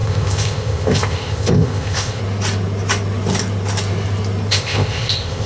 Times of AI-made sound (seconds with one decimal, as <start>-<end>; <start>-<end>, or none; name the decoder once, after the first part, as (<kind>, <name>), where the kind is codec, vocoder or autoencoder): 0.0-2.2 (codec, ZipCodec); 4.5-5.5